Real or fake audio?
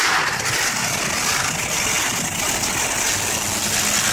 real